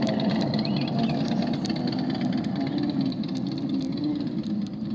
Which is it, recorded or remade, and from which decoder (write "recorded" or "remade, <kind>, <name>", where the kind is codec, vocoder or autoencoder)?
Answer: recorded